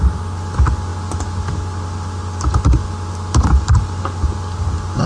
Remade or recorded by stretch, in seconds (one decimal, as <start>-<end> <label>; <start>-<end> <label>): 0.0-5.1 recorded

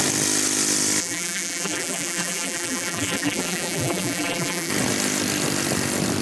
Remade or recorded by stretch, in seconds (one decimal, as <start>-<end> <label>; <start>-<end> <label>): 0.0-1.0 recorded; 1.0-4.7 remade; 4.7-6.2 recorded

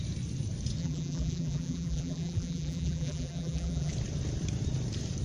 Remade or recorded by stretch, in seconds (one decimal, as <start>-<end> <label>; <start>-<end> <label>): 0.0-0.8 recorded; 0.8-3.9 remade; 3.9-5.2 recorded